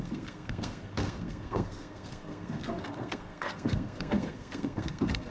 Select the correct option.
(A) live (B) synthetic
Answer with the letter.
B